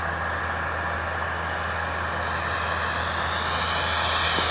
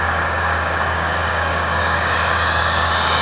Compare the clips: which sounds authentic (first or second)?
first